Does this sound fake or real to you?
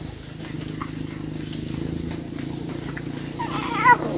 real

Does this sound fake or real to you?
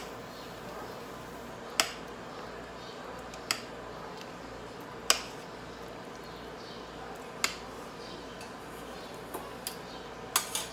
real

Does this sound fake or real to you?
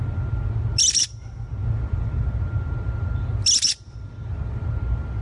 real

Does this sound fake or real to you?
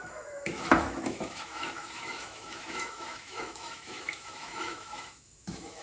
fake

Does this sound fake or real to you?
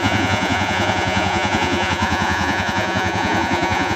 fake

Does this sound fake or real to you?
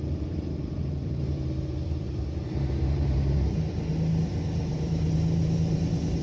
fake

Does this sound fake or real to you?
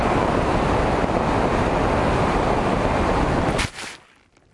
fake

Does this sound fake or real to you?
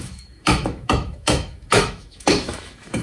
fake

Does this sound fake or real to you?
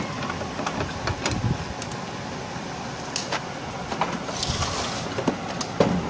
real